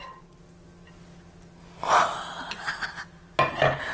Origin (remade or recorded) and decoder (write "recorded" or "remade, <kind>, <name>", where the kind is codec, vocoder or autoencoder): recorded